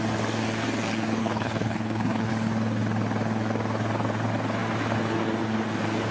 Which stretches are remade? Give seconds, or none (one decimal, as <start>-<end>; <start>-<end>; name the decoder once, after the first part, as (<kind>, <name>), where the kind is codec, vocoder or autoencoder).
1.2-2.3 (codec, HILCodec)